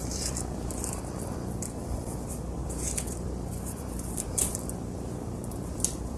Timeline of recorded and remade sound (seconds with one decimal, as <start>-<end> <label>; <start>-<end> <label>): 0.0-6.2 remade